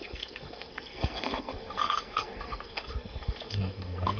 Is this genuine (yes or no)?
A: no